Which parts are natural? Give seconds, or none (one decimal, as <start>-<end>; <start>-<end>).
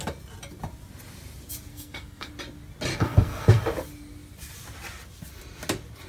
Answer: 0.0-1.7; 2.3-2.9; 3.6-6.1